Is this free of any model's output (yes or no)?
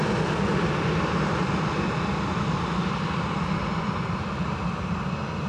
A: yes